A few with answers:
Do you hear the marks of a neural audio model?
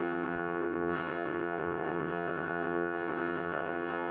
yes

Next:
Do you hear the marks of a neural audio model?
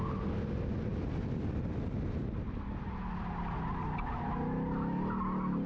no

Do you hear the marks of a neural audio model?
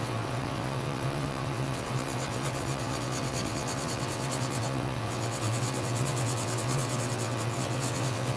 yes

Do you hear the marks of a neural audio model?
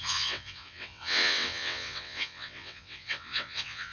yes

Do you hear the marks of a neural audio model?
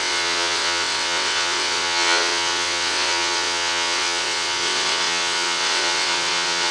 yes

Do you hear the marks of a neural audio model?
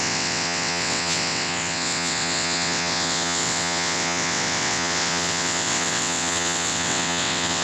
yes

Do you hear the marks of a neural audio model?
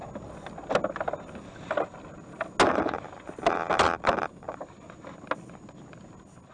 no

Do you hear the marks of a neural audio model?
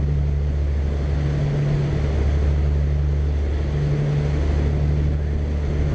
no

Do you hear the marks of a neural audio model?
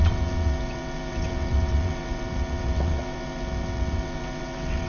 yes